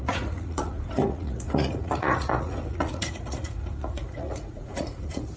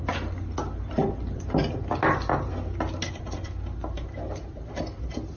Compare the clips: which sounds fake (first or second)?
first